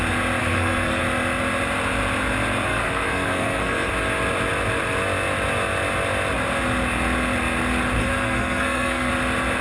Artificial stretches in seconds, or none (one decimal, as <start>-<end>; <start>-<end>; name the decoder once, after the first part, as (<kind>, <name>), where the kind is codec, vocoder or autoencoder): 0.4-1.0 (codec, SNAC); 2.7-3.9; 8.0-9.1